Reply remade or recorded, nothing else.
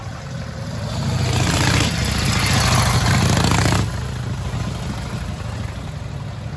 recorded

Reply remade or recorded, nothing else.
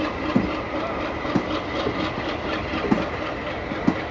recorded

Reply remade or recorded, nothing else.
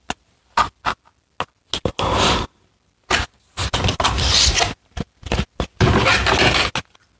recorded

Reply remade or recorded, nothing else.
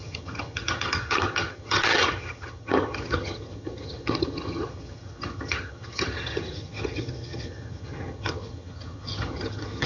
remade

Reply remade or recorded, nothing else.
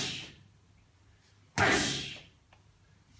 recorded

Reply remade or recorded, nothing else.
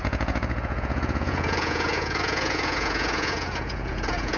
remade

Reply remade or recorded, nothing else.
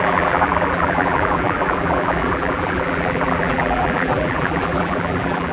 remade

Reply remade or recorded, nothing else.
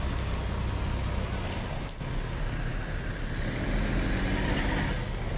recorded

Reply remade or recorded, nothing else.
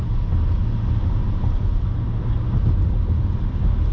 recorded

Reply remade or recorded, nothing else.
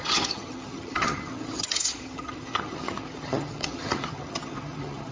remade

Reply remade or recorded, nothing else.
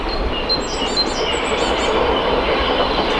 recorded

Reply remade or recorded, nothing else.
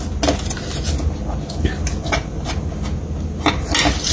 recorded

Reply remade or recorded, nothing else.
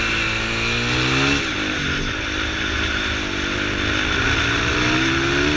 recorded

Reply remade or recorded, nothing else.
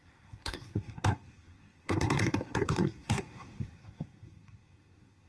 remade